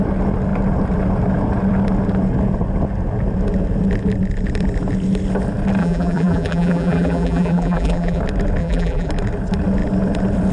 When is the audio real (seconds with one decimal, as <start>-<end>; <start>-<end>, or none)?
0.0-5.8; 8.2-8.6; 9.1-10.5